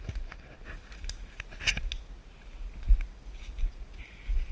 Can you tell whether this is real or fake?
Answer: real